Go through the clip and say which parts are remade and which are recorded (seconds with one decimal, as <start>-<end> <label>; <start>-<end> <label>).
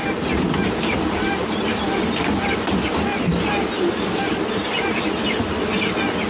0.0-6.3 recorded